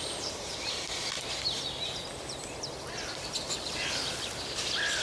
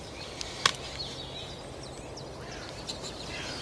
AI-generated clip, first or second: first